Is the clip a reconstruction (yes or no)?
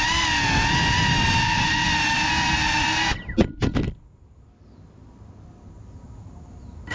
no